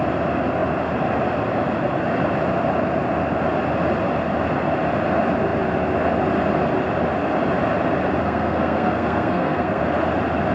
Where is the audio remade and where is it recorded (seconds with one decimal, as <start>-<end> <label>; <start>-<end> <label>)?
0.0-8.2 recorded; 8.2-9.8 remade; 9.8-10.5 recorded